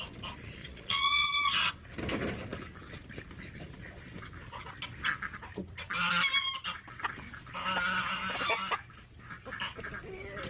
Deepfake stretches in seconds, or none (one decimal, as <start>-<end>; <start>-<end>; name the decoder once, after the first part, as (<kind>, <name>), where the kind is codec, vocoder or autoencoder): 0.6-1.7 (vocoder, Vocos)